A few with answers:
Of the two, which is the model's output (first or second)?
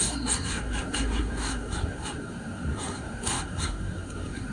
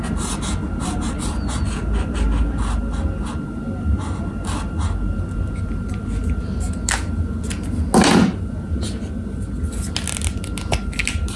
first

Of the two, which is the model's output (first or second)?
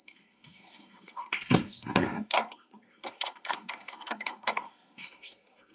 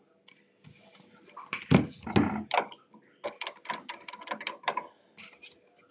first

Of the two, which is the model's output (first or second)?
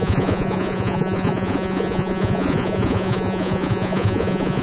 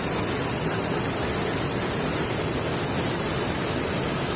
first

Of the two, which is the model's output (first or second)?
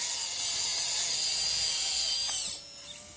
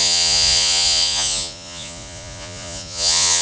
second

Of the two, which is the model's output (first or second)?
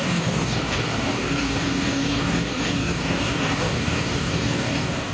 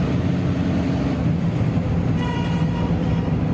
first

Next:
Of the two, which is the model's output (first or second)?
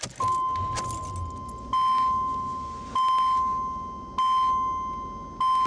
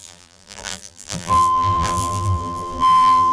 second